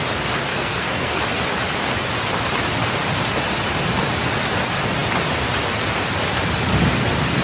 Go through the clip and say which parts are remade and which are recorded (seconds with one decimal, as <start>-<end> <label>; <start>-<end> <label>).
0.0-0.5 recorded; 0.5-1.2 remade; 1.2-7.4 recorded